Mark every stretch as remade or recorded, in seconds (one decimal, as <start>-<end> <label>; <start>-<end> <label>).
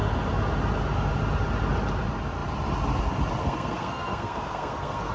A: 0.0-3.4 recorded; 3.4-5.1 remade